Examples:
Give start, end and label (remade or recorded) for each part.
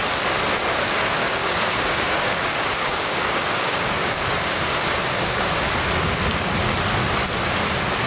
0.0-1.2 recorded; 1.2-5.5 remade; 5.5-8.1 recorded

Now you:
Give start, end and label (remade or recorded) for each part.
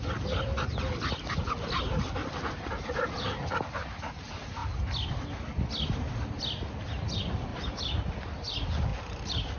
0.0-2.2 recorded; 2.2-3.6 remade; 3.6-7.5 recorded; 7.5-8.2 remade; 8.2-9.6 recorded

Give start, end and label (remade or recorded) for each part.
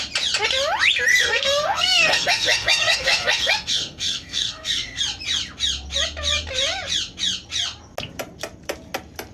0.0-1.1 recorded; 1.1-5.0 remade; 5.0-9.3 recorded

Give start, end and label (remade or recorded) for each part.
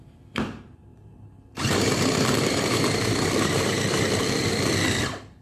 0.0-0.9 recorded; 0.9-4.1 remade; 4.1-5.4 recorded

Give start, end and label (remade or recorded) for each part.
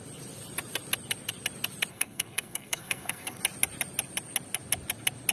0.0-1.9 recorded; 1.9-3.4 remade; 3.4-5.3 recorded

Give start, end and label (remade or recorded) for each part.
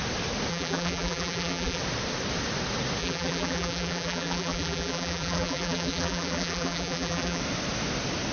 0.0-0.5 recorded; 0.5-1.8 remade; 1.8-3.0 recorded; 3.0-7.4 remade; 7.4-8.3 recorded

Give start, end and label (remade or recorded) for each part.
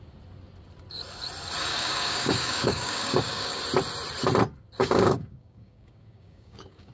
0.0-1.7 recorded; 1.7-3.6 remade; 3.6-4.8 recorded; 4.8-6.9 remade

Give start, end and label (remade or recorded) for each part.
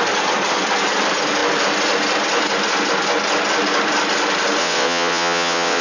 0.0-4.6 recorded; 4.6-5.8 remade